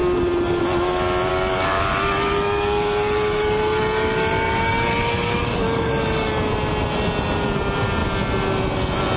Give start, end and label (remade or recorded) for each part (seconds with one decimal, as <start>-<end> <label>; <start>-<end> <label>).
0.0-1.3 recorded; 1.3-6.3 remade; 6.3-9.2 recorded